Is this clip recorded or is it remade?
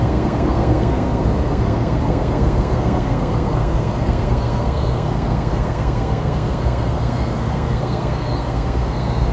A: remade